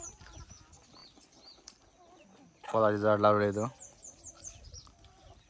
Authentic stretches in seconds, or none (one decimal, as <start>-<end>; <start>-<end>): 0.0-5.5